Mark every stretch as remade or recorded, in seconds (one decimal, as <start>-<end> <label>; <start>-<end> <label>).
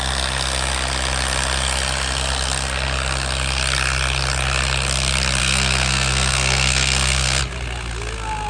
0.0-5.4 recorded; 5.4-7.4 remade; 7.4-8.5 recorded